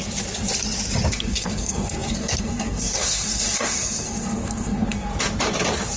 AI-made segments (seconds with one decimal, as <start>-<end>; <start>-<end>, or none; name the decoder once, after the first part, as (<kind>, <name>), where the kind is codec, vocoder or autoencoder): 1.1-5.1 (codec, SNAC)